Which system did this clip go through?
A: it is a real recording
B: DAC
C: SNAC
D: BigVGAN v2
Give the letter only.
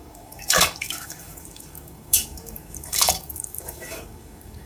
B